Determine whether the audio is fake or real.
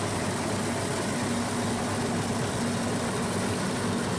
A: real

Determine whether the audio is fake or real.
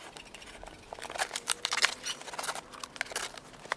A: real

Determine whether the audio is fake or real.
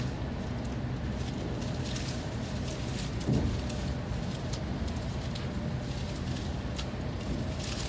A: real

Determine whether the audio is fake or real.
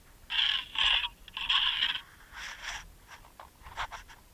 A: real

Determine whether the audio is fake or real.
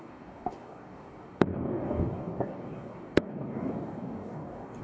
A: fake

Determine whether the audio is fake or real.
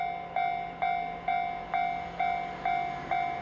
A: real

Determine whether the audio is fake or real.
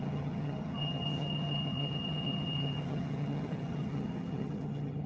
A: fake